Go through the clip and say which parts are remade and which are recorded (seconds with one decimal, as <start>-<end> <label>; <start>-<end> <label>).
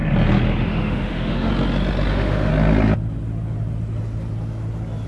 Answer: 0.0-0.6 recorded; 0.6-1.5 remade; 1.5-2.1 recorded; 2.1-2.5 remade; 2.5-5.1 recorded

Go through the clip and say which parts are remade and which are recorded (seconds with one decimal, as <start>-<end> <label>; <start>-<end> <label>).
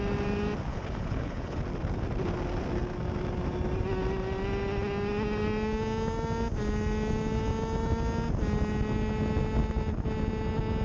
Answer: 0.0-0.7 recorded; 0.7-1.6 remade; 1.6-10.8 recorded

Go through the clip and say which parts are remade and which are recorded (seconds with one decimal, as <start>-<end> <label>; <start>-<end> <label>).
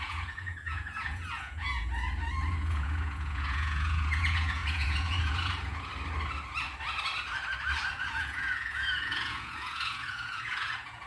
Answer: 0.0-1.9 remade; 1.9-2.5 recorded; 2.5-5.9 remade; 5.9-7.9 recorded; 7.9-11.1 remade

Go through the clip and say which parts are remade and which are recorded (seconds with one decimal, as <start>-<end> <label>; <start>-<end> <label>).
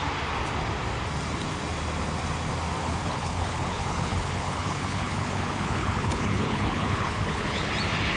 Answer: 0.0-2.8 recorded; 2.8-7.7 remade; 7.7-8.2 recorded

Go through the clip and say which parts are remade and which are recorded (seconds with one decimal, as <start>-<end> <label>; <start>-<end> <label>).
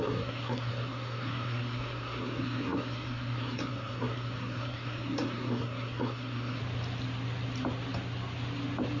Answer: 0.0-6.6 remade; 6.6-9.0 recorded